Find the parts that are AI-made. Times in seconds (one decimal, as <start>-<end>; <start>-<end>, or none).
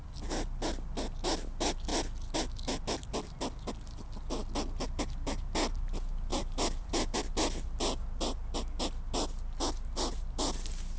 6.3-7.3; 10.1-11.0